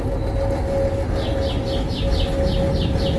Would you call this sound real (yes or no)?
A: yes